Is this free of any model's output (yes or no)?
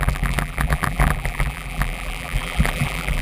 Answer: no